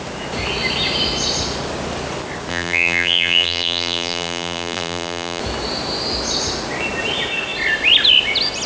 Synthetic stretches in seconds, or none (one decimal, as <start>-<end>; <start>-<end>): 2.5-5.4